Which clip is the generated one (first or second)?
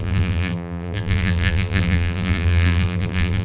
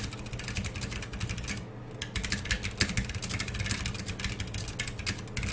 first